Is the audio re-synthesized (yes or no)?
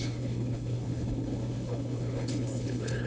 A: yes